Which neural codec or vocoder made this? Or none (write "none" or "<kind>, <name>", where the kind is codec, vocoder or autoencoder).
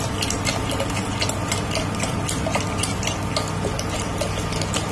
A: none